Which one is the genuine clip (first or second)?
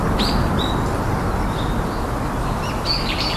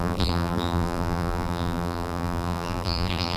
first